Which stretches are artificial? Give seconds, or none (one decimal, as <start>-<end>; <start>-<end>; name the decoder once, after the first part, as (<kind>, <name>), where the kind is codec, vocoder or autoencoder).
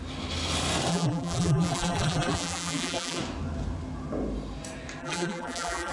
0.9-3.2 (vocoder, BigVGAN v2); 5.0-5.9